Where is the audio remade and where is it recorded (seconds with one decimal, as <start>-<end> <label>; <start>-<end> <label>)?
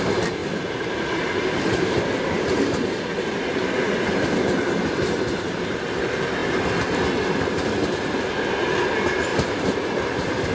0.0-9.3 recorded; 9.3-10.5 remade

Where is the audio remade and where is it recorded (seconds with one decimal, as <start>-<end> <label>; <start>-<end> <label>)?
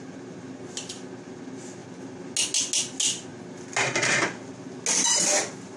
0.0-5.8 recorded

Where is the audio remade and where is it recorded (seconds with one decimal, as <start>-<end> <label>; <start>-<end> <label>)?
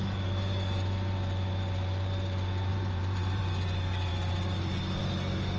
0.0-2.7 recorded; 2.7-3.4 remade; 3.4-5.6 recorded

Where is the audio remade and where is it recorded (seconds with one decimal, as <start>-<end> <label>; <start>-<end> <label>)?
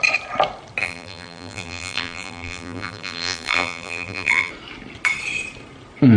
0.0-0.8 recorded; 0.8-4.5 remade; 4.5-6.2 recorded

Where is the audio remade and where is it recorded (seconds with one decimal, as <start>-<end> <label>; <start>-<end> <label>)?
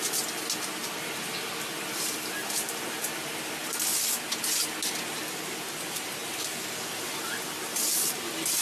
0.0-3.9 remade; 3.9-4.9 recorded; 4.9-8.6 remade